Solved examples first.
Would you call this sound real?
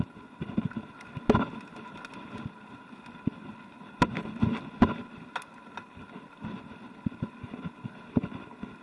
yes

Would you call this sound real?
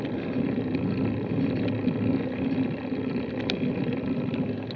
yes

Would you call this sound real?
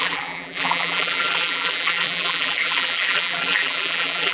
no